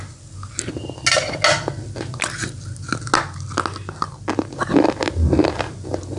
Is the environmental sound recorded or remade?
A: recorded